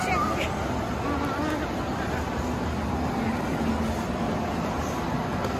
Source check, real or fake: real